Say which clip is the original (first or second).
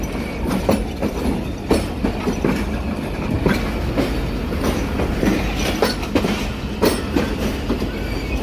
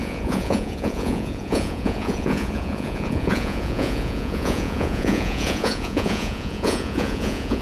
first